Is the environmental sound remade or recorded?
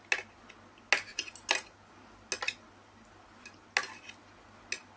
recorded